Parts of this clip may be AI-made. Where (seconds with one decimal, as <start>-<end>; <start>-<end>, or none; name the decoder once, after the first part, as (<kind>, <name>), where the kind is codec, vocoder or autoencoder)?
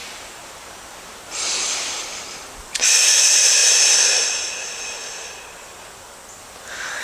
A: 0.0-3.0 (vocoder, BigVGAN v2)